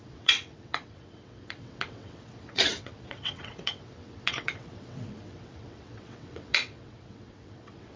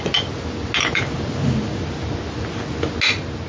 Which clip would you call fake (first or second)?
first